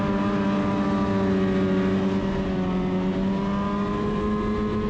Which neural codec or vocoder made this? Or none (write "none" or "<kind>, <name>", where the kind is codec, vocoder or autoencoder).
none